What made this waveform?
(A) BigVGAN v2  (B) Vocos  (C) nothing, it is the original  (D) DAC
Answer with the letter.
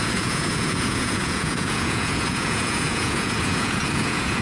B